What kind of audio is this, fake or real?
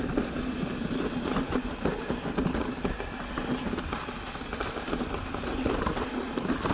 real